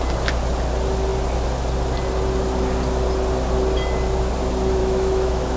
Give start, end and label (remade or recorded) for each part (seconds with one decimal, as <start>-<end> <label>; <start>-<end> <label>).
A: 0.0-4.8 recorded; 4.8-5.6 remade